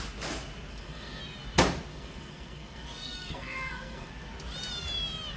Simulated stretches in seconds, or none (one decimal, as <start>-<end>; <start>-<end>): 0.7-1.2; 1.9-4.1